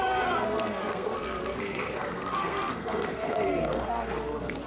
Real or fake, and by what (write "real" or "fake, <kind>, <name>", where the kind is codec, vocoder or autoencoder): fake, codec, SNAC